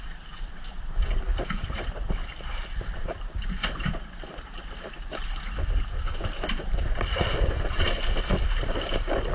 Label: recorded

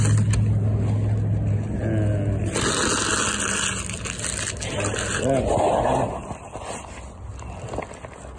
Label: recorded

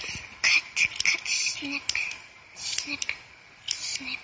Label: recorded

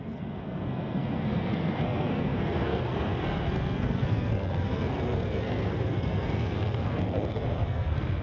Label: remade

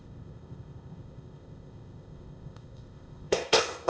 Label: remade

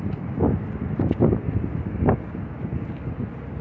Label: recorded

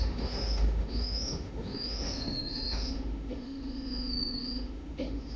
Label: remade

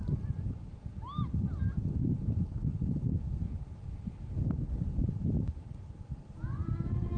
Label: recorded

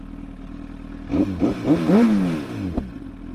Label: recorded